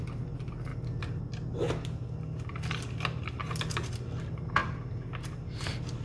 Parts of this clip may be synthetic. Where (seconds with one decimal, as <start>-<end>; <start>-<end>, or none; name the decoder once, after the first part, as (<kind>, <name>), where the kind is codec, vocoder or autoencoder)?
none